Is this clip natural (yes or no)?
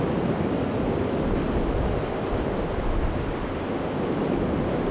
yes